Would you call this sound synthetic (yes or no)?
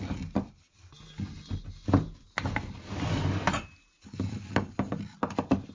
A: no